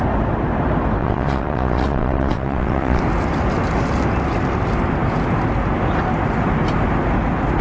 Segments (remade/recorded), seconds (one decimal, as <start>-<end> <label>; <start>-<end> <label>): 0.0-1.0 recorded; 1.0-3.0 remade; 3.0-7.6 recorded